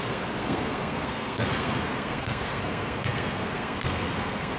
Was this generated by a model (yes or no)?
yes